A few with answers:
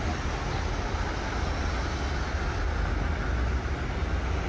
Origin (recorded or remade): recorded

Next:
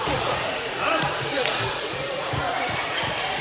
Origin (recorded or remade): remade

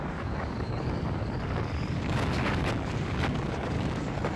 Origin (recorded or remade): remade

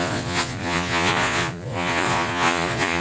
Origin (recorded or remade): remade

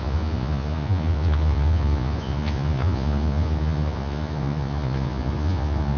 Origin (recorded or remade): remade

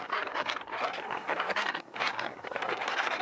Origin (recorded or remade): remade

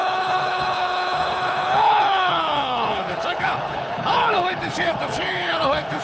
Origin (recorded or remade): remade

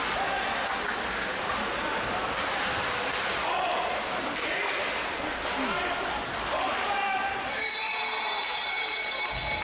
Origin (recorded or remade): recorded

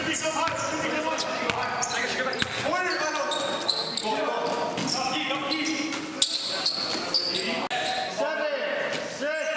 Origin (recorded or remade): recorded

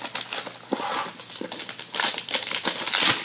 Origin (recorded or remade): recorded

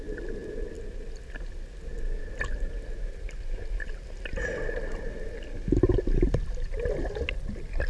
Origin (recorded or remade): recorded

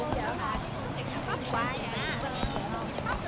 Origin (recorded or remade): recorded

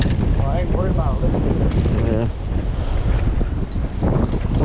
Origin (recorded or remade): recorded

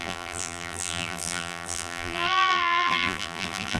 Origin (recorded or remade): remade